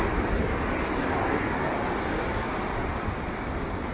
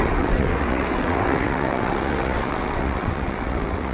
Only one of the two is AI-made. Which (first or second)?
second